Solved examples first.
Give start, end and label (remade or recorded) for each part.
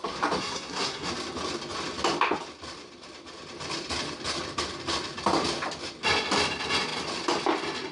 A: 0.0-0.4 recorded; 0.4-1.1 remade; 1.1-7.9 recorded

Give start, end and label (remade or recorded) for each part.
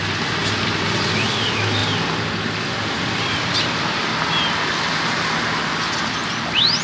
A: 0.0-0.4 recorded; 0.4-1.1 remade; 1.1-1.8 recorded; 1.8-5.2 remade; 5.2-6.8 recorded